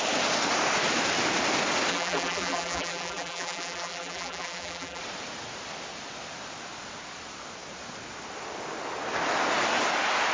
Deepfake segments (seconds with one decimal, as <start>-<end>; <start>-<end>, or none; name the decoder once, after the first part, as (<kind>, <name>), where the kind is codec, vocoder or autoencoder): 1.9-5.0 (vocoder, BigVGAN v2)